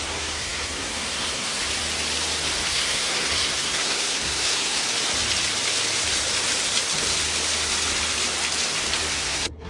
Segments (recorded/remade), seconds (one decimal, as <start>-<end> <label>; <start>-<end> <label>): 0.0-1.6 remade; 1.6-2.7 recorded; 2.7-4.8 remade; 4.8-9.1 recorded; 9.1-9.7 remade